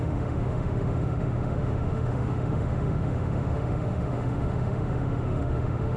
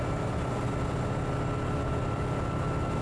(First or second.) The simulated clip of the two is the first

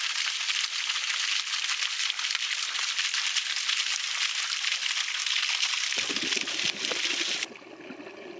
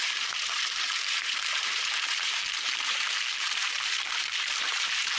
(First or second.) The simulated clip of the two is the second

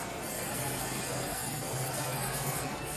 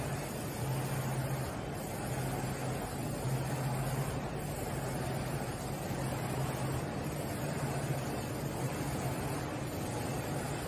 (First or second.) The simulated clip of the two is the first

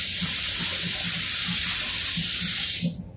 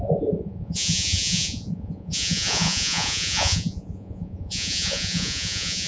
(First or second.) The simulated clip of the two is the second